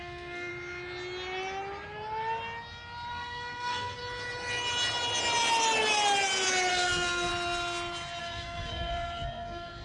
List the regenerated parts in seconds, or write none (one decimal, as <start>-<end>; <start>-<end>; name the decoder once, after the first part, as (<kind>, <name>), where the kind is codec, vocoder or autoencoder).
0.0-0.5 (codec, SNAC); 3.1-4.0; 6.7-7.3; 8.2-9.8

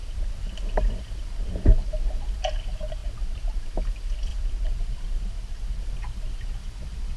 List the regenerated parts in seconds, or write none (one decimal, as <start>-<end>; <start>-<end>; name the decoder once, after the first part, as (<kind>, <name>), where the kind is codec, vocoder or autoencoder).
0.0-1.4 (vocoder, BigVGAN v2); 3.0-3.6; 4.3-5.8

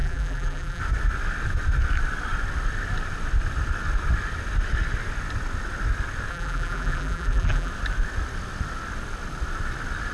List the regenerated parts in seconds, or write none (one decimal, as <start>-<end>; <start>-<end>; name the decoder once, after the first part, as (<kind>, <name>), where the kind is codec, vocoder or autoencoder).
0.0-0.8 (vocoder, BigVGAN v2); 6.3-7.7

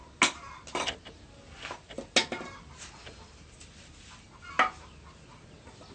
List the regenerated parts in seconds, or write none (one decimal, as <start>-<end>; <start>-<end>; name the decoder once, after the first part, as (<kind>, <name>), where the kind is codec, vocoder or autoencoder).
none

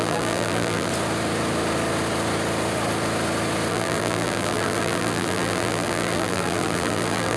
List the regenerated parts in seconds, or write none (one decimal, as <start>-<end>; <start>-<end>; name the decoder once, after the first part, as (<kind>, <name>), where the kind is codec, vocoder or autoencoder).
0.0-0.9 (vocoder, BigVGAN v2); 3.7-7.4